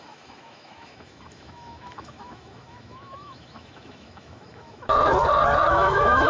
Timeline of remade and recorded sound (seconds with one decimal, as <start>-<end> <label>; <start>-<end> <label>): 0.0-4.9 remade; 4.9-5.7 recorded; 5.7-6.3 remade